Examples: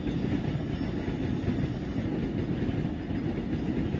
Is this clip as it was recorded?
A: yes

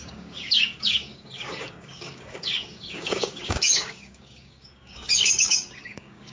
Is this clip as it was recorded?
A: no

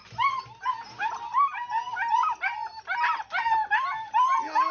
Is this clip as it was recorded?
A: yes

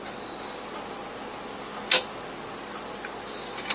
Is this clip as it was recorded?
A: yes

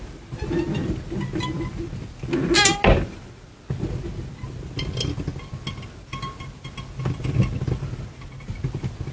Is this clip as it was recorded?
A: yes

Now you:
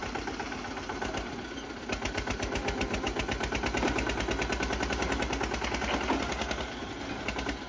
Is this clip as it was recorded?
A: yes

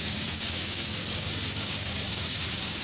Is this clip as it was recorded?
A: no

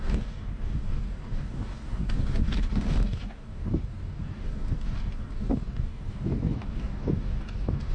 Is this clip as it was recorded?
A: no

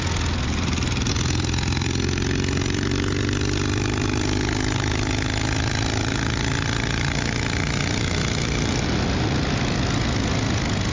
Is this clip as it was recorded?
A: yes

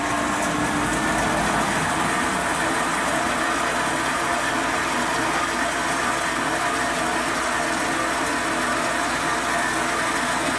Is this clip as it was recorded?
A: yes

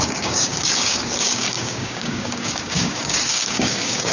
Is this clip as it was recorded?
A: no